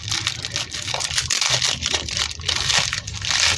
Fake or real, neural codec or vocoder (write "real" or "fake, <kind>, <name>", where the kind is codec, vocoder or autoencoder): real